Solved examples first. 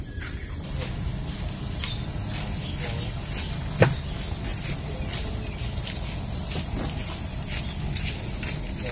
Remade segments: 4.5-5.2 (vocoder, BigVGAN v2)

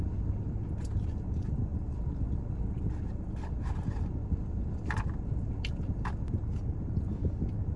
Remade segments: none